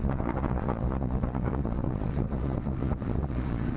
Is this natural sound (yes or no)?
no